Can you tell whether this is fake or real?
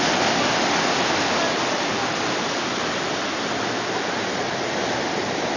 real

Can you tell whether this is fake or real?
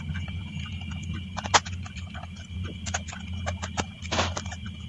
real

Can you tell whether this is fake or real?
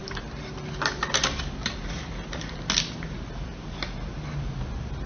real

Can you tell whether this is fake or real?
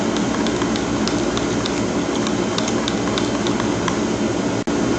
real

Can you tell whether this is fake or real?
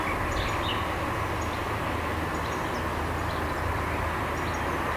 real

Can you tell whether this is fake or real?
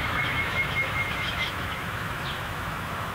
fake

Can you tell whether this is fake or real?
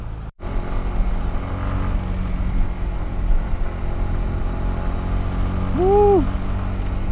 real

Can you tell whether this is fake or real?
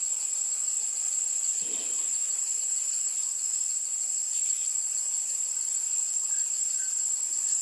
real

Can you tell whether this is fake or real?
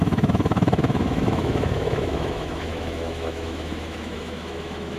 fake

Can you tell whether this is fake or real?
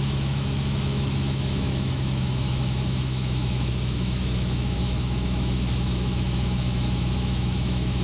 fake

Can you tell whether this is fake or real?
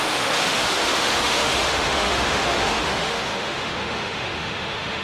fake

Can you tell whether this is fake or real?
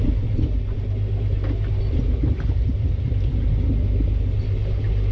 real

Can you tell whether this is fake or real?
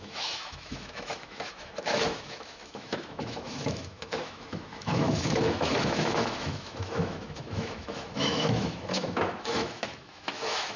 fake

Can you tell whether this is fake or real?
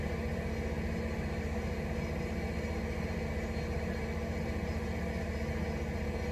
real